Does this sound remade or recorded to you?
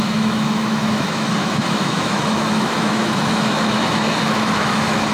remade